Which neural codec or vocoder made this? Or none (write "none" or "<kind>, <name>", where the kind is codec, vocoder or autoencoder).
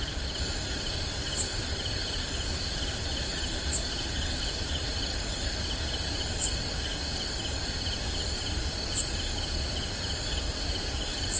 none